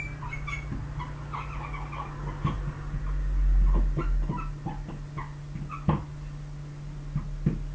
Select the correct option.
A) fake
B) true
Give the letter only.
B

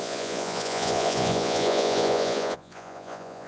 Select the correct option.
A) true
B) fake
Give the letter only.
B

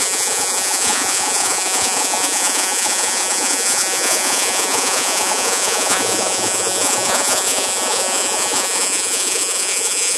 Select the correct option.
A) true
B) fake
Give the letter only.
B